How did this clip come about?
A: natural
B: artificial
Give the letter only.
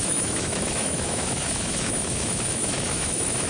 B